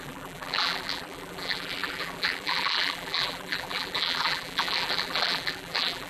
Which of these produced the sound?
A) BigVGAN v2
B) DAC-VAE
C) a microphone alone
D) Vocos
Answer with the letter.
A